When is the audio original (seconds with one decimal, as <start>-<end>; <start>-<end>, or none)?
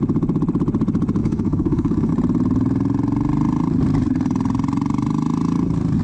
0.0-1.2; 2.1-6.0